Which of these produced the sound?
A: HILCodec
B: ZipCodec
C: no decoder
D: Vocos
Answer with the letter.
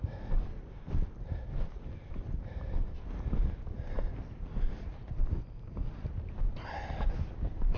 C